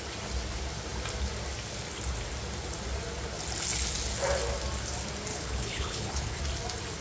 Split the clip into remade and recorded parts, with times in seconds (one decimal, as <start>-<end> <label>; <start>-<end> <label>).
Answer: 0.0-5.3 recorded; 5.3-6.4 remade; 6.4-7.0 recorded